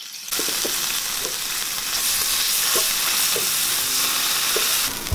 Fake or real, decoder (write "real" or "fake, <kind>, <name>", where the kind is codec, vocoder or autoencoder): real